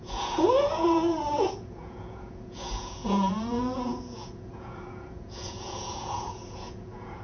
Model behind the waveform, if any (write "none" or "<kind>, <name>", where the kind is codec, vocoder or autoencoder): vocoder, Vocos